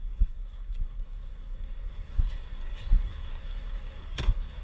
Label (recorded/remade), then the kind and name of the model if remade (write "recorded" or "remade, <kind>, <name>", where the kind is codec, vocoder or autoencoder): remade, codec, SNAC